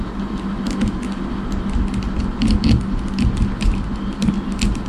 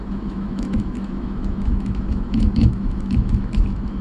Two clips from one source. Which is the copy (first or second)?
second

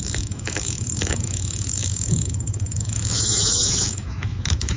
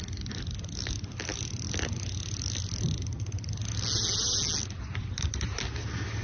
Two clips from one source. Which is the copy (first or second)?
first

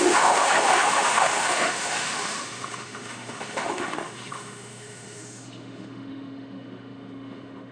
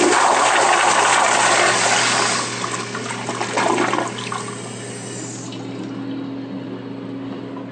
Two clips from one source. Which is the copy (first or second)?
first